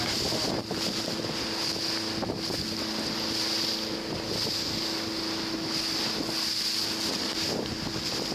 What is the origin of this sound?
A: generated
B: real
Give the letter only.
B